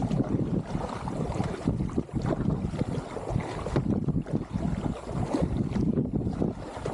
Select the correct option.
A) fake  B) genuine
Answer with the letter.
B